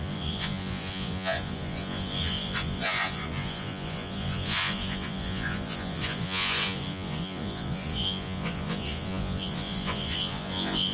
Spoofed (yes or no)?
yes